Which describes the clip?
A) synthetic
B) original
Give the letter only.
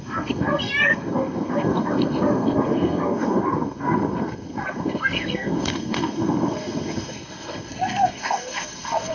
A